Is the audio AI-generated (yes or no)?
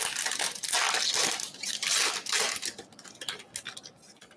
no